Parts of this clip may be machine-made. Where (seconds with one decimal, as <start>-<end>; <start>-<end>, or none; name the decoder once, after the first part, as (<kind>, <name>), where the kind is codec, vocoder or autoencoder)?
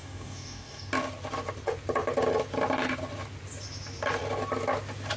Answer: 0.0-0.9 (codec, DAC)